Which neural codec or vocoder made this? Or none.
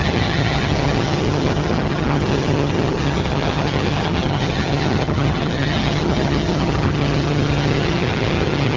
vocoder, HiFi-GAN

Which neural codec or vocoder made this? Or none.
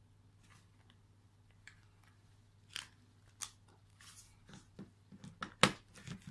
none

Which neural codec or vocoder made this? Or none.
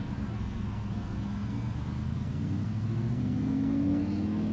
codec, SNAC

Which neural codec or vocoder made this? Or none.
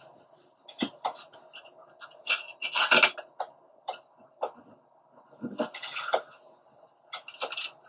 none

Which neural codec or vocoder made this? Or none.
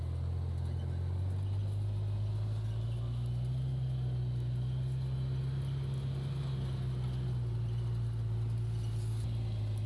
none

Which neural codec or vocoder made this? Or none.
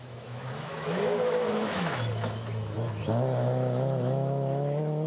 autoencoder, DAC-VAE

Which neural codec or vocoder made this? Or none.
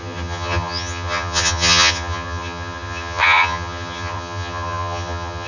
vocoder, HiFi-GAN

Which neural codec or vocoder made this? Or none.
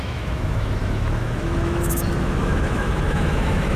autoencoder, DAC-VAE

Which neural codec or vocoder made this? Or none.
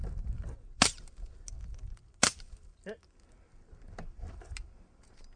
none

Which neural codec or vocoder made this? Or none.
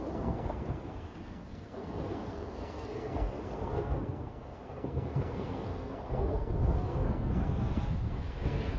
codec, SNAC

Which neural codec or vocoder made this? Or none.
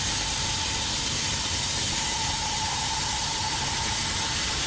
none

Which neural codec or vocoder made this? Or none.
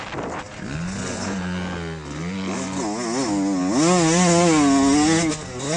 none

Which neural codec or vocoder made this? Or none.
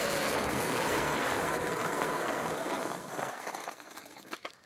codec, SNAC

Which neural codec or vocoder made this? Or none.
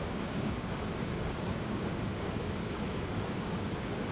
codec, DAC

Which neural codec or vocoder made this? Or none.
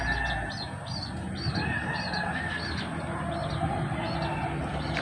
none